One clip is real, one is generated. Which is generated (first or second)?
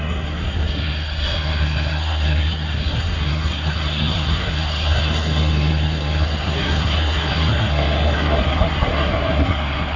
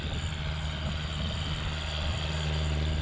first